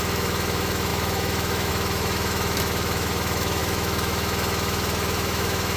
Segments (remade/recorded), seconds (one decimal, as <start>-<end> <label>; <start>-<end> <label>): 0.0-5.8 remade